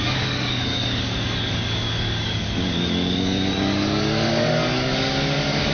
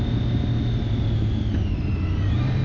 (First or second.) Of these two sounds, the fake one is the first